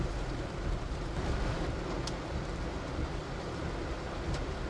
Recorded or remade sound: remade